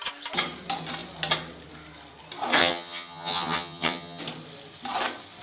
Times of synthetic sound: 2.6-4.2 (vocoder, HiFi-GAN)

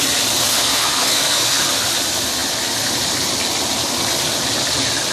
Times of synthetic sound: 0.5-1.6 (codec, SNAC)

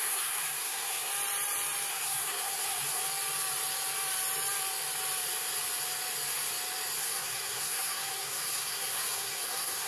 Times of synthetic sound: 0.0-1.1 (codec, SNAC); 1.9-3.0; 7.0-9.9

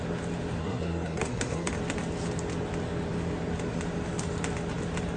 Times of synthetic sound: 0.6-1.7 (codec, SNAC)

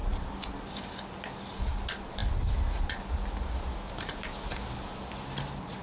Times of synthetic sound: none

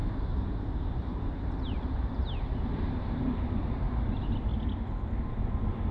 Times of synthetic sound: 0.0-4.5 (vocoder, BigVGAN v2); 5.3-5.9